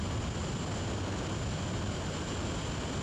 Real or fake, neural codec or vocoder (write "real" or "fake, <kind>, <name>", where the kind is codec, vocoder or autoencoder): real